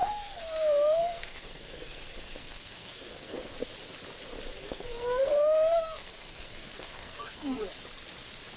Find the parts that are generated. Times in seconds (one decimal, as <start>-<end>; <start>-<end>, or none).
0.0-3.5; 4.6-7.6